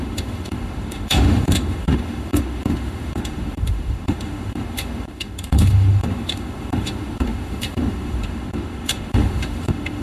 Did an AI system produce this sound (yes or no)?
yes